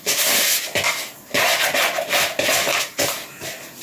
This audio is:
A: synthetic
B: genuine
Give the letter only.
B